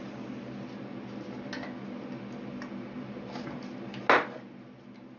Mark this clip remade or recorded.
recorded